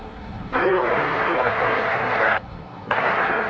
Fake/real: fake